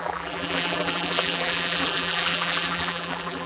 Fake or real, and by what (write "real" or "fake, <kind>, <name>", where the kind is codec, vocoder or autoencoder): fake, vocoder, BigVGAN v2